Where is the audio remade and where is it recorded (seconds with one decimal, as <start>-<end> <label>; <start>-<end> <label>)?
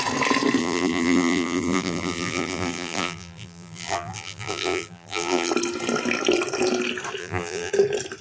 0.0-0.6 recorded; 0.6-5.5 remade; 5.5-7.2 recorded; 7.2-7.7 remade; 7.7-8.2 recorded